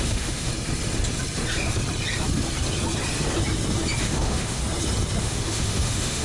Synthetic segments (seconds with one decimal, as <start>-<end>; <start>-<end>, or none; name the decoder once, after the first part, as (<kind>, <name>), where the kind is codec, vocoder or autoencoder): 0.0-0.5 (autoencoder, DAC-VAE); 4.0-4.6; 5.2-6.2